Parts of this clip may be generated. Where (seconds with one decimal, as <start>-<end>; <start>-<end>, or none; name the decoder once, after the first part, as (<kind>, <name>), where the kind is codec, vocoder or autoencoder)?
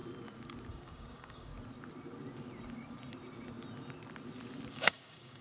0.7-1.5 (codec, DAC); 4.7-5.4